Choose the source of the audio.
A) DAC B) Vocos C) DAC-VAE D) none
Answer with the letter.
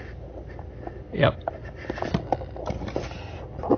D